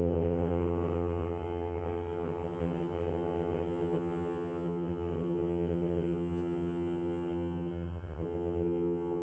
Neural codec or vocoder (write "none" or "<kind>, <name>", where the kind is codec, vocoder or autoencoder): vocoder, HiFi-GAN